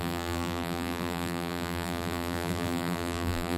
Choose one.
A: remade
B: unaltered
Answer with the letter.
A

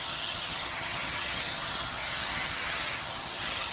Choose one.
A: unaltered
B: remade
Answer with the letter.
B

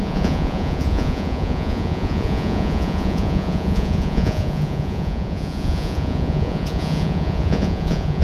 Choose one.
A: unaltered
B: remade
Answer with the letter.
B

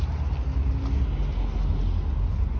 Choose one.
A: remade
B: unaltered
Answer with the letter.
B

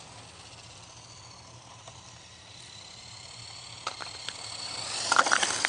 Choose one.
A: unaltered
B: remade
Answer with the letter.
A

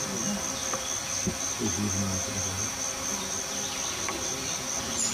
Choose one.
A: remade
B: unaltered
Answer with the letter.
B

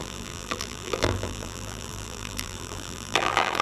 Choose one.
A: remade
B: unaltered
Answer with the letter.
A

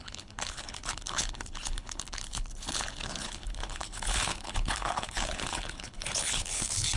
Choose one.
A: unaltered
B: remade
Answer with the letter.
B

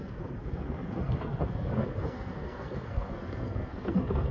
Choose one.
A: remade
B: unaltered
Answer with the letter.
A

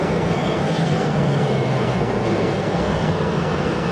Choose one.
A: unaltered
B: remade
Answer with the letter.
B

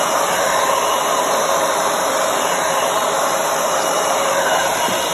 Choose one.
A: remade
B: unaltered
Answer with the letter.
A